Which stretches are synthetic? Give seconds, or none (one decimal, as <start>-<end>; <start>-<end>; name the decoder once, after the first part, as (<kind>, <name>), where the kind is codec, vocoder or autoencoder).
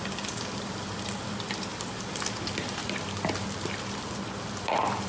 0.0-5.1 (vocoder, BigVGAN v2)